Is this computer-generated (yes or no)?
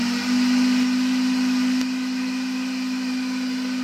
no